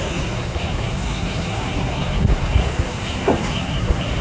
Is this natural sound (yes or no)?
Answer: no